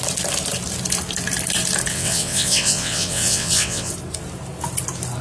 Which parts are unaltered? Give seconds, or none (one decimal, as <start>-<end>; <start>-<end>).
0.0-1.9; 3.9-5.2